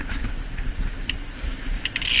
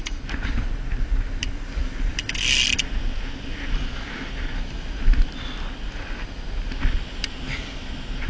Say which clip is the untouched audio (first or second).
second